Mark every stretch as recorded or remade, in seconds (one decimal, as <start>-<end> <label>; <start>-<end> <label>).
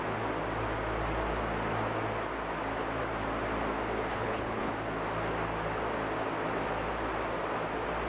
0.0-4.1 recorded; 4.1-4.7 remade; 4.7-8.1 recorded